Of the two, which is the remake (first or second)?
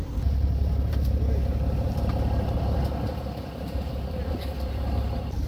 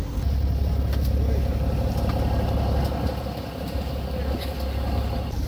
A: first